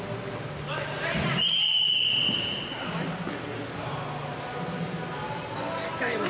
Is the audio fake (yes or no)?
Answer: no